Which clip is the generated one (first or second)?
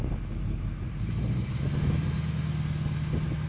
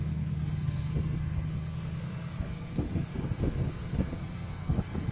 second